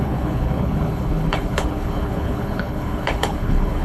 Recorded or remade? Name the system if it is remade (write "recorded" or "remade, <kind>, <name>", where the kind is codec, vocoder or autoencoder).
remade, codec, HILCodec